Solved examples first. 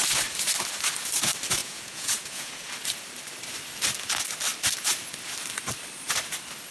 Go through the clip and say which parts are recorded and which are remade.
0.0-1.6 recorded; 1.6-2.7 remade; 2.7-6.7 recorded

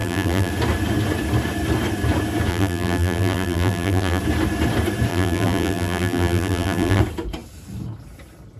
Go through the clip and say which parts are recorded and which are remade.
0.0-0.5 remade; 0.5-2.5 recorded; 2.5-4.2 remade; 4.2-5.1 recorded; 5.1-7.0 remade; 7.0-8.6 recorded

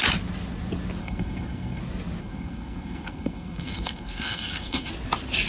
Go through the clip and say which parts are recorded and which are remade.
0.0-1.0 recorded; 1.0-1.8 remade; 1.8-2.2 recorded; 2.2-4.9 remade; 4.9-5.5 recorded

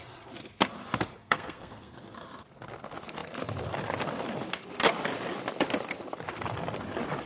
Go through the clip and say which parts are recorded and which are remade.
0.0-1.2 recorded; 1.2-2.0 remade; 2.0-7.3 recorded

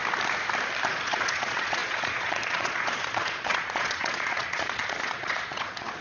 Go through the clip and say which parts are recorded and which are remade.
0.0-0.9 recorded; 0.9-6.0 remade

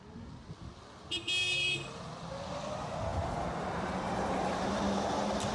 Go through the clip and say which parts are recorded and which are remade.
0.0-1.4 recorded; 1.4-2.1 remade; 2.1-3.1 recorded; 3.1-4.8 remade; 4.8-5.5 recorded